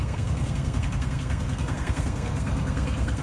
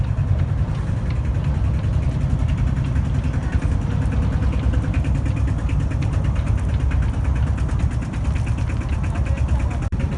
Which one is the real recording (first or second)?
second